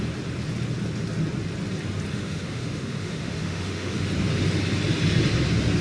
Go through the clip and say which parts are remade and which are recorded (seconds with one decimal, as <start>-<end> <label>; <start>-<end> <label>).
0.0-2.1 recorded; 2.1-4.1 remade; 4.1-5.8 recorded